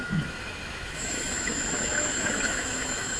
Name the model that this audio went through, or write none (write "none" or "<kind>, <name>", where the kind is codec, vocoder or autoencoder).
autoencoder, DAC-VAE